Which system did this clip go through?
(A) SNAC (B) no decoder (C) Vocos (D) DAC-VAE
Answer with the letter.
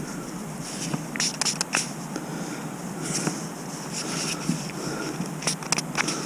B